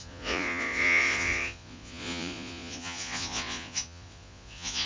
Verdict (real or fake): fake